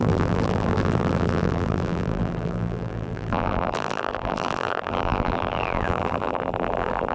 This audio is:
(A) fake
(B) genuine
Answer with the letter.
A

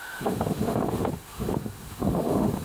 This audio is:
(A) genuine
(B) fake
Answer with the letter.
B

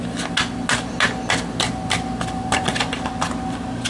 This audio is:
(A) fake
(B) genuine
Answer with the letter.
B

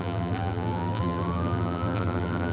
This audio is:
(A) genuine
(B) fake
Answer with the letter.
B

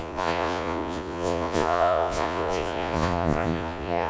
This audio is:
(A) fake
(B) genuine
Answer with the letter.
A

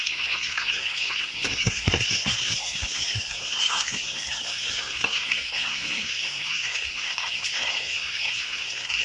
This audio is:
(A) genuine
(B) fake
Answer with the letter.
B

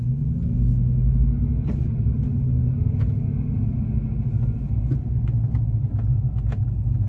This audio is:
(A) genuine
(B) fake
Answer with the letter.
A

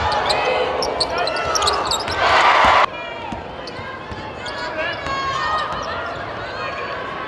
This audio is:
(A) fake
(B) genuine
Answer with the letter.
B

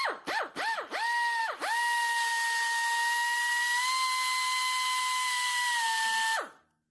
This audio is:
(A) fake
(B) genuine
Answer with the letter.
B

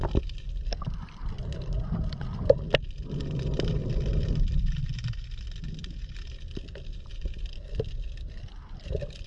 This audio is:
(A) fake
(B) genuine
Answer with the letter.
B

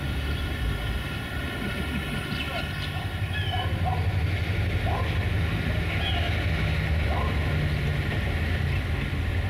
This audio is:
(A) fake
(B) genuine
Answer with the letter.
B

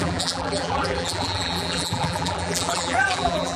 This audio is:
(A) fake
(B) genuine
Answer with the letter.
A